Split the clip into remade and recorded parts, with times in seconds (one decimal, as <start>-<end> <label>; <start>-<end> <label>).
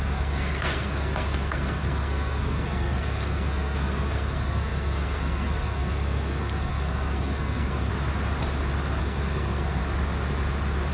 0.0-7.9 remade; 7.9-9.0 recorded; 9.0-9.8 remade; 9.8-10.9 recorded